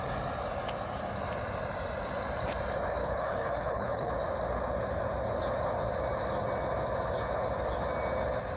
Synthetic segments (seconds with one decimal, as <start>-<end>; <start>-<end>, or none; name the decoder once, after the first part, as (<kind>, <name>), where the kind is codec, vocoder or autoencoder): 3.0-4.1 (codec, HILCodec)